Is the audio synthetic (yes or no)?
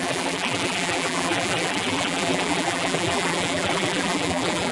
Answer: yes